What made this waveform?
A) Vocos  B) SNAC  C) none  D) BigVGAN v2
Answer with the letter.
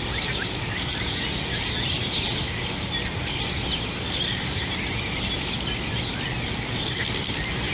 C